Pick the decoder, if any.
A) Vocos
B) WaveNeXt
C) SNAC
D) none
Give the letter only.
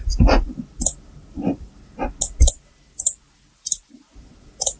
D